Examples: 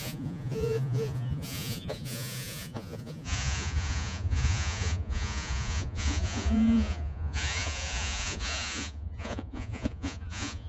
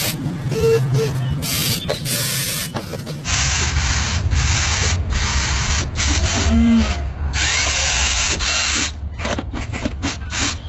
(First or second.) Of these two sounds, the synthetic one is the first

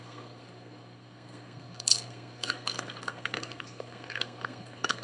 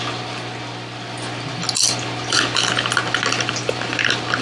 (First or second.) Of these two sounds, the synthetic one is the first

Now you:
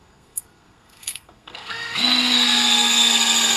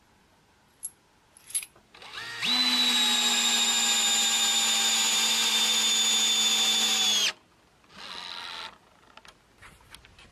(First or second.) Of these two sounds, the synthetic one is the first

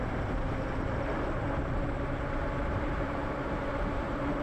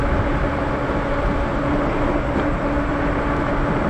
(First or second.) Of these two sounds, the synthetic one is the first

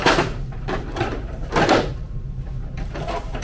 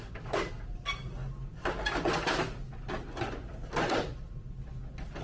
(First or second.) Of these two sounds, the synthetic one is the first